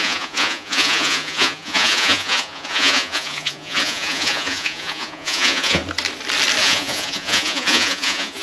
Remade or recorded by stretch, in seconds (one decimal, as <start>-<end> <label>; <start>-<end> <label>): 0.0-5.8 remade; 5.8-6.6 recorded; 6.6-8.4 remade